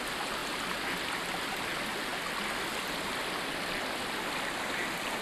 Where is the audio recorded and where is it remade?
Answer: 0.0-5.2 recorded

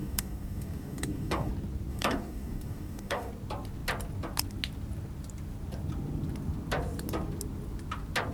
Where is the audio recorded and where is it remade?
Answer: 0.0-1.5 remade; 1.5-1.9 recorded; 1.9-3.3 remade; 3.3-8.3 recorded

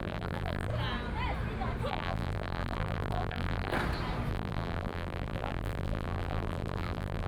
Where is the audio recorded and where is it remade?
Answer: 0.0-0.7 remade; 0.7-1.9 recorded; 1.9-3.7 remade; 3.7-4.3 recorded; 4.3-7.3 remade

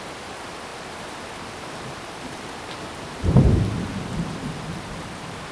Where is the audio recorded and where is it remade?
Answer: 0.0-0.7 recorded; 0.7-4.0 remade; 4.0-5.5 recorded

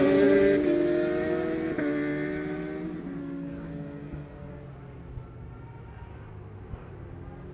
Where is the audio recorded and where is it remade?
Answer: 0.0-3.2 recorded; 3.2-4.5 remade; 4.5-6.1 recorded; 6.1-6.9 remade; 6.9-7.5 recorded

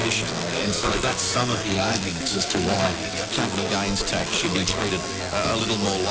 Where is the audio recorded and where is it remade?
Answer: 0.0-3.7 remade; 3.7-4.2 recorded; 4.2-4.9 remade; 4.9-6.1 recorded